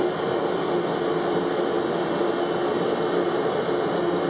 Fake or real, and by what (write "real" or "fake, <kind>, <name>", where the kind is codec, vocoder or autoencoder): real